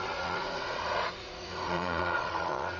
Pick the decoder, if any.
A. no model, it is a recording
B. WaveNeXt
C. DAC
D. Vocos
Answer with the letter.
D